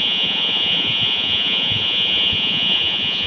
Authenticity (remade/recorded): remade